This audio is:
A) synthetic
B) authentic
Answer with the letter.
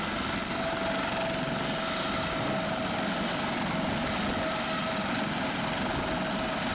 B